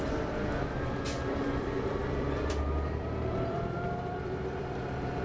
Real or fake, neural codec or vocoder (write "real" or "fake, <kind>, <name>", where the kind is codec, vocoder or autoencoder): fake, vocoder, BigVGAN v2